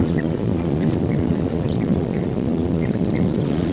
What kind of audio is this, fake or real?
fake